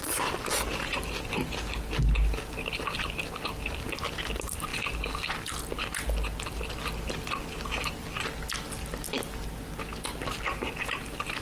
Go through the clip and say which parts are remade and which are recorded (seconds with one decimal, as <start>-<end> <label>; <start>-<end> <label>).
0.0-11.4 recorded